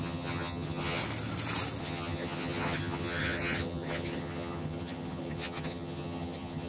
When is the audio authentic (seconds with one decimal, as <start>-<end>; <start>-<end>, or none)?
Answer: 1.0-1.8